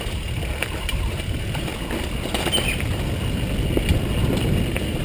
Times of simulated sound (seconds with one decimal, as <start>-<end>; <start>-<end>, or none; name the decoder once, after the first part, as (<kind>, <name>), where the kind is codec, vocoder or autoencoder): 0.0-1.7 (vocoder, BigVGAN v2)